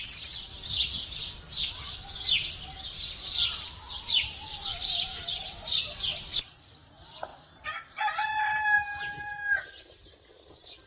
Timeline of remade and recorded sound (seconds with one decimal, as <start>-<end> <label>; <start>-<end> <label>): 0.0-4.5 recorded; 4.5-6.2 remade; 6.2-10.9 recorded